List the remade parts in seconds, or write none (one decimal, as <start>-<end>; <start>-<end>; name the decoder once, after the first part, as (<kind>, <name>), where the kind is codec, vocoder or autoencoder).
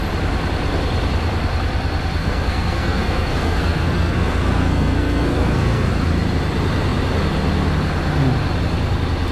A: 2.2-5.9 (codec, SNAC)